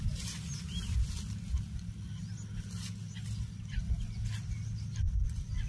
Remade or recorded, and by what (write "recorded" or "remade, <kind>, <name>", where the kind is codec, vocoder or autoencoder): recorded